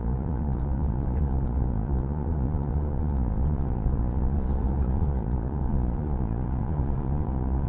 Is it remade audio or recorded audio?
remade